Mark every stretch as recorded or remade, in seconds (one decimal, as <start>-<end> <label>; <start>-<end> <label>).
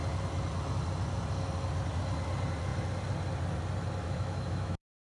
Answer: 0.0-4.0 recorded; 4.0-5.2 remade